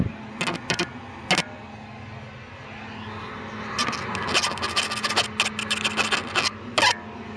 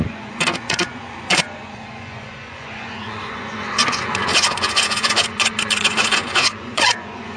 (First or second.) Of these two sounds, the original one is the first